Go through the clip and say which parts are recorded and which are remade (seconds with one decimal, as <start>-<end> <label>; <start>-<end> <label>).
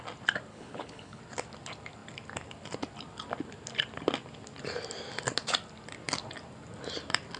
0.0-0.5 recorded; 0.5-1.2 remade; 1.2-7.4 recorded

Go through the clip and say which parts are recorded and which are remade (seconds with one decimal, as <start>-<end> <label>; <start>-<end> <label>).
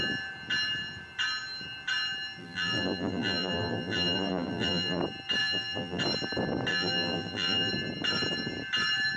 0.0-2.4 recorded; 2.4-5.0 remade; 5.0-5.4 recorded; 5.4-6.0 remade; 6.0-6.7 recorded; 6.7-7.7 remade; 7.7-9.2 recorded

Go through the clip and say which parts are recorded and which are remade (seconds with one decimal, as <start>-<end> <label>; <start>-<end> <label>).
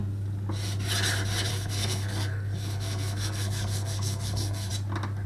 0.0-1.5 recorded; 1.5-4.7 remade; 4.7-5.3 recorded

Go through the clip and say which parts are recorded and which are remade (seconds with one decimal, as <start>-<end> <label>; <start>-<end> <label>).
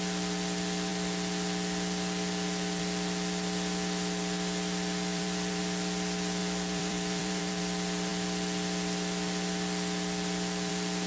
0.0-5.1 recorded; 5.1-5.6 remade; 5.6-6.4 recorded; 6.4-7.6 remade; 7.6-11.1 recorded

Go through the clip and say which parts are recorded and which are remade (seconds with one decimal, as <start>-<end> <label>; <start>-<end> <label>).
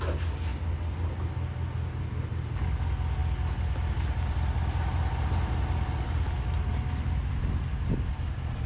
0.0-8.7 recorded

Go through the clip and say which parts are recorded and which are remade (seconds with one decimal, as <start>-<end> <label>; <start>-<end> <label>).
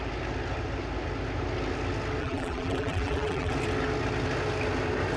0.0-2.2 recorded; 2.2-3.5 remade; 3.5-5.2 recorded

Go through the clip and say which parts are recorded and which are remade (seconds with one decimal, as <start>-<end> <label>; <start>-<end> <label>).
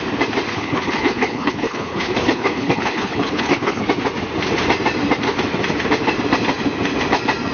0.0-0.5 recorded; 0.5-3.8 remade; 3.8-7.5 recorded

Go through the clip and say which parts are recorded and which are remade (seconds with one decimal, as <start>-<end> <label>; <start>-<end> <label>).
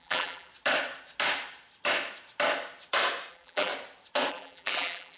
0.0-0.5 remade; 0.5-3.3 recorded; 3.3-3.7 remade; 3.7-4.3 recorded; 4.3-5.2 remade